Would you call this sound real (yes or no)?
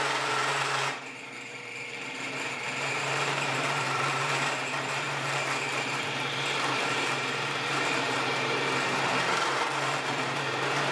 no